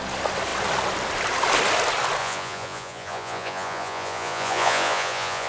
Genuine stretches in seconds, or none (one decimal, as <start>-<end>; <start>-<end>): 0.0-2.2